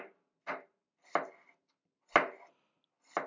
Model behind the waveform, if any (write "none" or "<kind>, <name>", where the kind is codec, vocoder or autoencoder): none